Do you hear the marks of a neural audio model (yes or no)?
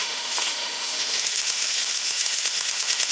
yes